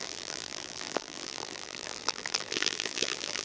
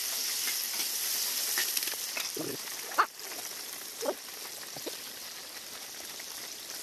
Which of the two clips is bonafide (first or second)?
second